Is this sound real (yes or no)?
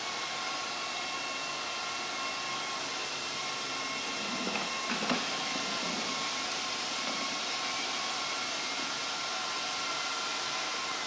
no